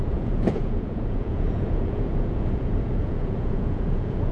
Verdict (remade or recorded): remade